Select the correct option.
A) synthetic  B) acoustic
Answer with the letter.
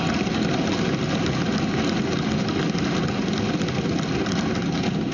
B